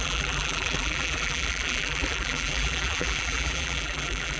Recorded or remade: remade